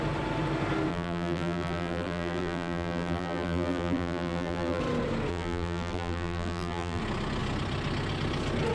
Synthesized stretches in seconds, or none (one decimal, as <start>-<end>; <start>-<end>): 0.9-4.8; 5.3-7.0